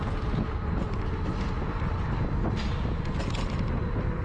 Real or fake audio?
real